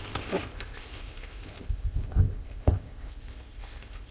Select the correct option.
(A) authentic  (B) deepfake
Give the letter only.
B